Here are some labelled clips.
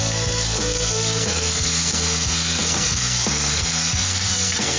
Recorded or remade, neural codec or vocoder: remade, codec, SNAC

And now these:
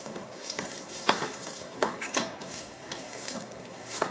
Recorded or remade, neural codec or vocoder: remade, codec, SNAC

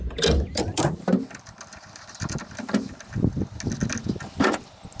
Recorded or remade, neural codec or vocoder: recorded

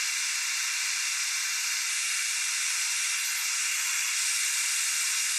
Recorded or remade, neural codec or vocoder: recorded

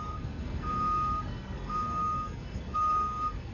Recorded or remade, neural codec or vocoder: remade, codec, SNAC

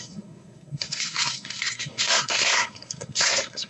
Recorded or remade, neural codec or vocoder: remade, codec, SNAC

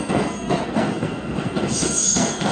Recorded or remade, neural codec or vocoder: remade, codec, SNAC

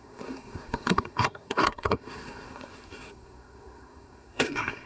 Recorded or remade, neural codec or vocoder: remade, codec, SNAC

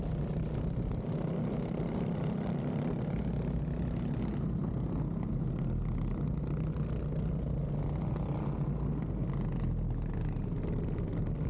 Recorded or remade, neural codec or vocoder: recorded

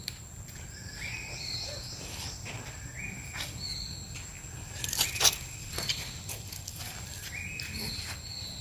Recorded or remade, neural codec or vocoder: recorded